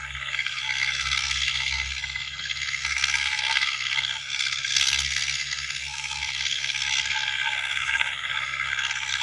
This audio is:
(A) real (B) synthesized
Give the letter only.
B